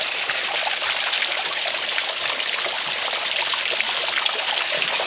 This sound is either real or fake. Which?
real